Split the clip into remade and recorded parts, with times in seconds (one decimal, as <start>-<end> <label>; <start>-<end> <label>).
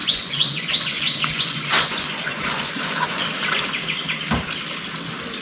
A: 0.0-3.2 remade; 3.2-5.4 recorded